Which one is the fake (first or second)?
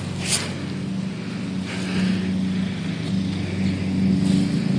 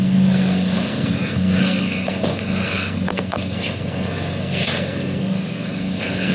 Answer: second